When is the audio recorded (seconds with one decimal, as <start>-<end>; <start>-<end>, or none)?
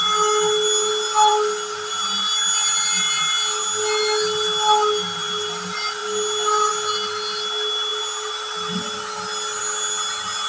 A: 0.0-10.5